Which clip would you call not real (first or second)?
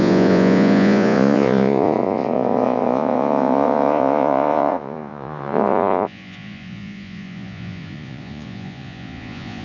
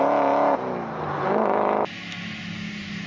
first